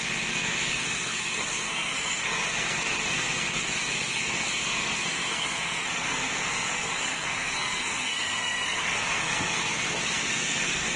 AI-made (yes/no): yes